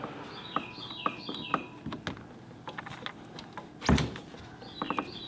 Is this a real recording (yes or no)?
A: yes